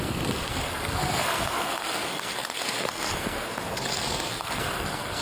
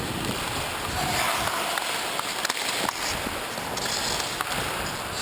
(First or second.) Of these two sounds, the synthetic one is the first